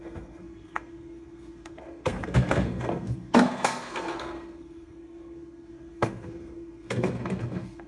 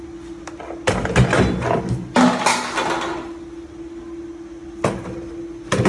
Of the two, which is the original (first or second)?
second